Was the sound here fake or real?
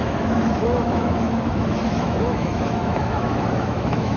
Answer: fake